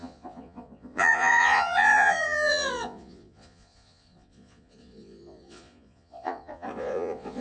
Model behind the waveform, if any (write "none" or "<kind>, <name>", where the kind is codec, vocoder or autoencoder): vocoder, Vocos